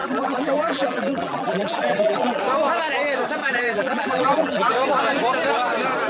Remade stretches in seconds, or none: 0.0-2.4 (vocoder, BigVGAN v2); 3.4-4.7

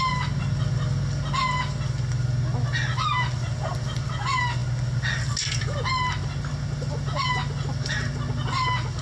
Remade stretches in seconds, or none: none

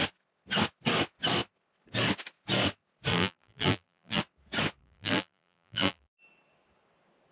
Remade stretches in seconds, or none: 3.1-4.2 (vocoder, BigVGAN v2); 4.8-6.1

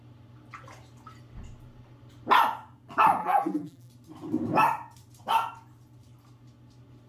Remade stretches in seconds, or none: 3.2-3.9 (vocoder, BigVGAN v2)

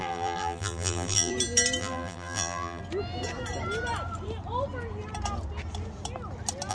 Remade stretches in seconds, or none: 0.0-1.3 (vocoder, BigVGAN v2); 1.8-2.8

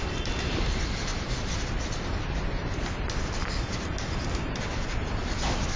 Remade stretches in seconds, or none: 0.0-1.1 (vocoder, BigVGAN v2); 4.6-5.2